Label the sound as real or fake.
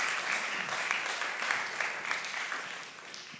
real